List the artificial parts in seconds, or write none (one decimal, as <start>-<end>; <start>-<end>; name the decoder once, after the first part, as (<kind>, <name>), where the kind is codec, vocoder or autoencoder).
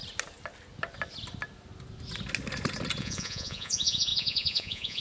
3.0-5.0 (vocoder, Vocos)